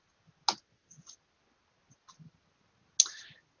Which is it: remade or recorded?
recorded